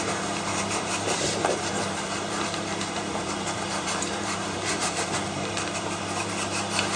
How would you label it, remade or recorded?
remade